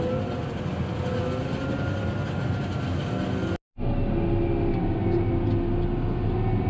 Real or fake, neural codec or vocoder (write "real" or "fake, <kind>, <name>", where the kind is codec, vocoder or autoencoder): real